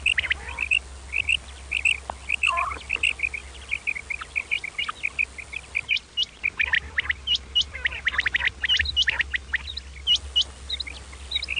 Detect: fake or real real